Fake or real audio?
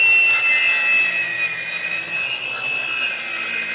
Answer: real